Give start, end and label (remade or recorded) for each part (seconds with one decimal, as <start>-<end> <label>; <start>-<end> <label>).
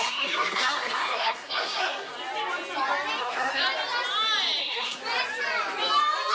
0.0-2.1 remade; 2.1-3.2 recorded; 3.2-3.6 remade; 3.6-4.6 recorded; 4.6-5.0 remade; 5.0-6.3 recorded